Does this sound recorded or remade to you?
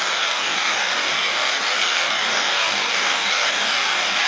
remade